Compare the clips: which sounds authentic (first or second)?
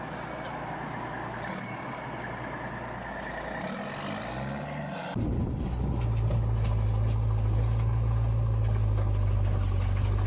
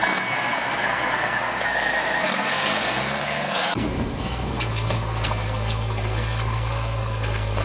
first